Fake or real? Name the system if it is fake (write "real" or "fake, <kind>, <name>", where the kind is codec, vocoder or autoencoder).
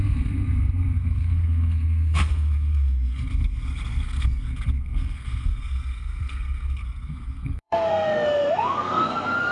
fake, codec, SNAC